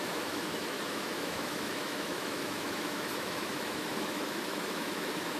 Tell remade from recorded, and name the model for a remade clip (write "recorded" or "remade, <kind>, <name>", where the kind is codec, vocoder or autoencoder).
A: remade, autoencoder, DAC-VAE